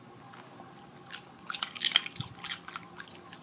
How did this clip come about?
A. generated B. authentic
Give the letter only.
B